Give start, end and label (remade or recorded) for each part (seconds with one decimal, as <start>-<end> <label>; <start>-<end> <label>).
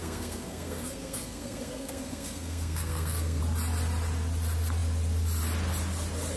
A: 0.0-3.4 remade; 3.4-6.4 recorded